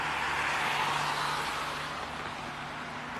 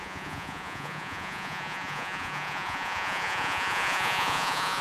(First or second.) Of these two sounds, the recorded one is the first